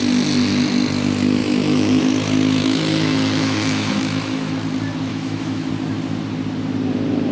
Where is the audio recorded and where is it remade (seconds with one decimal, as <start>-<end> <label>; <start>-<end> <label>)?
0.0-1.4 recorded; 1.4-2.0 remade; 2.0-2.6 recorded; 2.6-4.6 remade; 4.6-5.1 recorded; 5.1-5.7 remade; 5.7-7.3 recorded